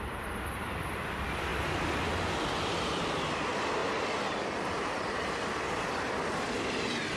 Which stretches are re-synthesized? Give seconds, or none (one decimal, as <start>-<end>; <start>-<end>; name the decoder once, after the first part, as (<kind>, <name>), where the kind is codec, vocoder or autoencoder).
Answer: none